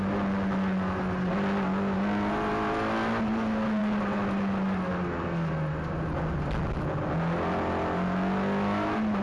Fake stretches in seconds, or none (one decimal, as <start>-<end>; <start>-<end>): none